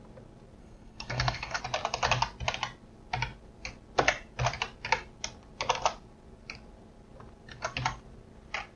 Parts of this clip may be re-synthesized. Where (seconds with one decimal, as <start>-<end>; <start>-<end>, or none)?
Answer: 0.6-1.6